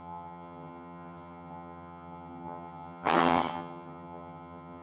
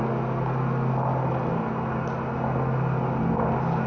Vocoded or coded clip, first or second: first